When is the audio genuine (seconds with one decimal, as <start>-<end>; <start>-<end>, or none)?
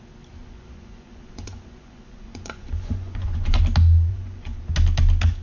0.0-0.4; 3.6-4.1; 4.6-5.4